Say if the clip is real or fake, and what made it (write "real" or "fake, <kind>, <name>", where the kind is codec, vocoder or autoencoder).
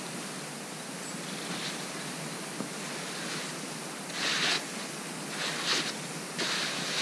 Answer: real